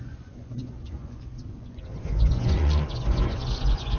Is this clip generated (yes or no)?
yes